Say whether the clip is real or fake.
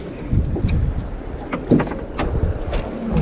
real